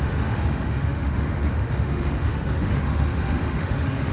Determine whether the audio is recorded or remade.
remade